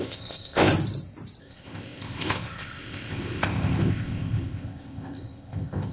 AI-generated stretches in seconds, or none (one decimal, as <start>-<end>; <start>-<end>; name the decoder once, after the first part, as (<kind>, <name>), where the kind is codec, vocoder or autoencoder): 0.0-0.7 (codec, ZipCodec); 1.4-5.9